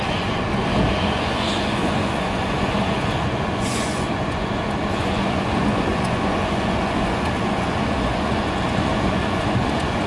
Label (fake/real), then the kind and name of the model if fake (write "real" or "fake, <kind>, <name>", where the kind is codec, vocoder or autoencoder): fake, vocoder, Vocos